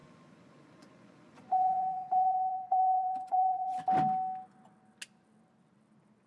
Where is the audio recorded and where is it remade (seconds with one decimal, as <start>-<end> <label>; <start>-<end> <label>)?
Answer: 0.0-3.8 remade; 3.8-6.3 recorded